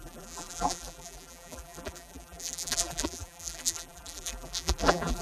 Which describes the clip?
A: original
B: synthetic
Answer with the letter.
B